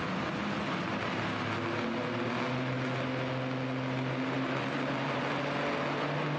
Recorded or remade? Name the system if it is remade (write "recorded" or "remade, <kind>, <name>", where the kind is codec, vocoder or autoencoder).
recorded